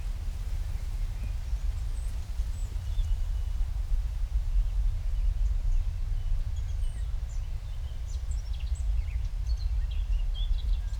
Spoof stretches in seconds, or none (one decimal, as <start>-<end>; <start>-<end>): 2.6-3.7